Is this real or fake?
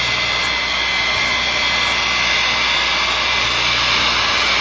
real